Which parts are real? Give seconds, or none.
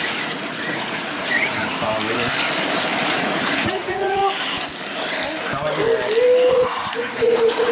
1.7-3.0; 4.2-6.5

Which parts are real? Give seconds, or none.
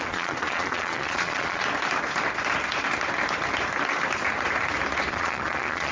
1.6-5.1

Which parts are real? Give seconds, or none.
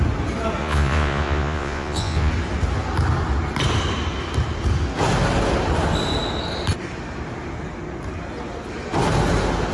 0.0-0.6; 2.3-9.7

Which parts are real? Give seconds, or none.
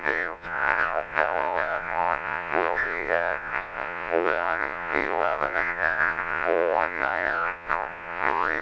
none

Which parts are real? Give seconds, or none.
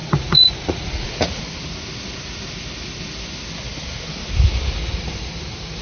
1.4-5.8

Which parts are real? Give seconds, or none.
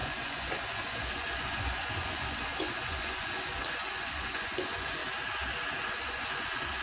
5.0-5.8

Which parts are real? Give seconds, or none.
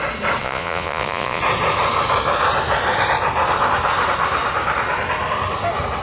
0.0-0.4; 1.4-6.0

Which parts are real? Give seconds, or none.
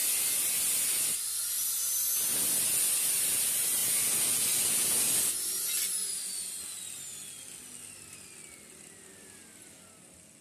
0.0-10.4